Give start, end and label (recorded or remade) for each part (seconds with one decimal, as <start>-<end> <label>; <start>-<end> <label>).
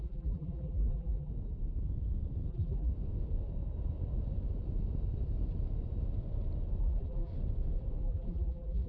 0.0-1.3 remade; 1.3-2.5 recorded; 2.5-2.9 remade; 2.9-6.8 recorded; 6.8-7.3 remade; 7.3-8.0 recorded; 8.0-8.9 remade